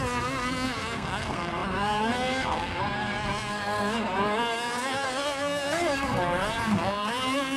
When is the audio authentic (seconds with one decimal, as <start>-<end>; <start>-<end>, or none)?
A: none